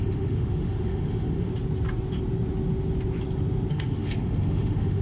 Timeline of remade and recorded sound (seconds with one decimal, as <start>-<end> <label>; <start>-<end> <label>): 0.0-1.5 remade; 1.5-3.7 recorded; 3.7-5.0 remade